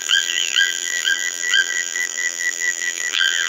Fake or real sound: fake